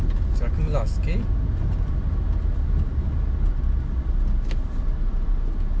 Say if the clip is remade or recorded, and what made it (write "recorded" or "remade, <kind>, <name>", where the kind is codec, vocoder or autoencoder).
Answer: recorded